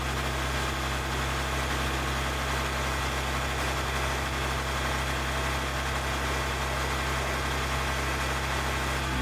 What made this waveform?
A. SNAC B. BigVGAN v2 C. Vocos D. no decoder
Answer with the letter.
D